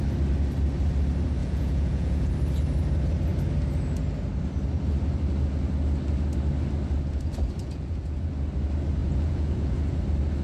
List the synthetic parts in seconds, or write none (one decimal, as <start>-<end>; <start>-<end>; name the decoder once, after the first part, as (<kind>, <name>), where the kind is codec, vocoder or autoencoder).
1.4-2.3 (vocoder, Vocos); 7.6-8.3; 9.0-10.0